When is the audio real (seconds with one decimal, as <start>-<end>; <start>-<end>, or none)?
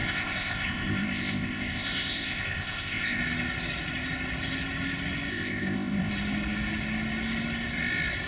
3.2-5.3; 6.1-8.3